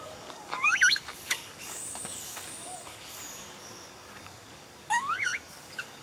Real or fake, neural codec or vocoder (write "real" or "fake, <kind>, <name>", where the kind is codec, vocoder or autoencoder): fake, codec, DAC